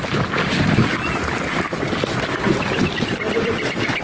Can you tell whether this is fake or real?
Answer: real